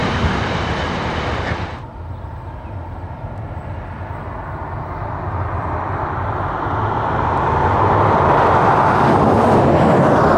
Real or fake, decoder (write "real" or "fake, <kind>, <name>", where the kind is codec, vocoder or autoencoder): real